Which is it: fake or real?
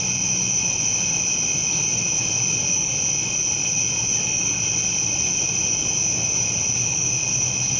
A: real